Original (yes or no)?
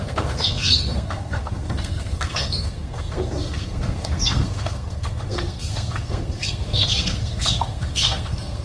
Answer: no